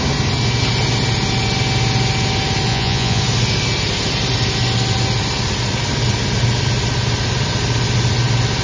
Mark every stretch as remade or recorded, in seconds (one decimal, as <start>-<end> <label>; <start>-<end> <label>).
0.0-2.7 recorded; 2.7-3.2 remade; 3.2-8.6 recorded

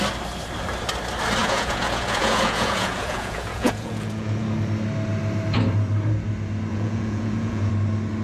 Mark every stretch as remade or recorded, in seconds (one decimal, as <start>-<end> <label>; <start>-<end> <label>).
0.0-1.4 recorded; 1.4-4.4 remade; 4.4-6.7 recorded; 6.7-7.7 remade; 7.7-8.2 recorded

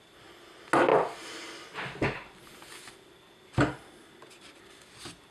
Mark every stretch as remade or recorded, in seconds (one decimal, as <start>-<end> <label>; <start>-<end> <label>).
0.0-5.3 recorded

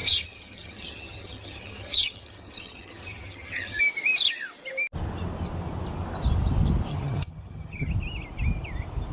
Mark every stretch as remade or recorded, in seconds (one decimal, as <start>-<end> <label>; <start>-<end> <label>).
0.0-3.8 remade; 3.8-6.9 recorded; 6.9-7.9 remade; 7.9-9.1 recorded

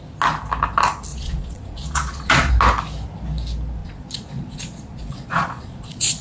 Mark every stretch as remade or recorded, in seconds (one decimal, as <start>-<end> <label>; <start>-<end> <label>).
0.0-1.1 recorded; 1.1-2.5 remade; 2.5-3.8 recorded; 3.8-6.2 remade

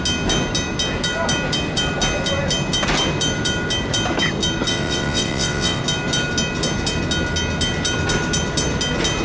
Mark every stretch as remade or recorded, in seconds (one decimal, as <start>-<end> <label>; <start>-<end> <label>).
0.0-4.7 recorded; 4.7-5.8 remade; 5.8-9.2 recorded

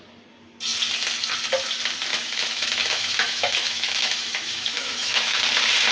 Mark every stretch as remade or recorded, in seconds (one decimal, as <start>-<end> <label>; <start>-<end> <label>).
0.0-2.1 recorded; 2.1-5.4 remade; 5.4-5.9 recorded